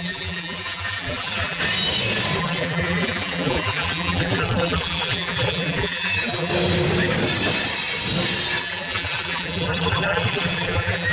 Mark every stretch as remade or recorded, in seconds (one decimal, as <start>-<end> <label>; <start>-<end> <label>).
0.0-1.6 remade; 1.6-2.4 recorded; 2.4-6.5 remade; 6.5-8.6 recorded; 8.6-11.1 remade